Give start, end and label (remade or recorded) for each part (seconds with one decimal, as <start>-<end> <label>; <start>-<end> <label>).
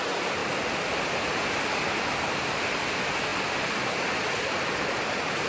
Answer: 0.0-5.5 recorded